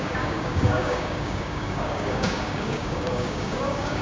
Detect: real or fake fake